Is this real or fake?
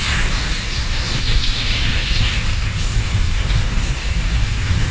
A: fake